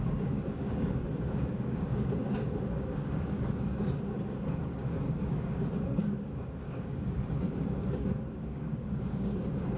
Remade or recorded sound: remade